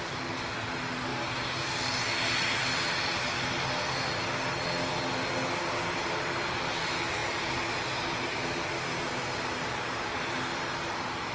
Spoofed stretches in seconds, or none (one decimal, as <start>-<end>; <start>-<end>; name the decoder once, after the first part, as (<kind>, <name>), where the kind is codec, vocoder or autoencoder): none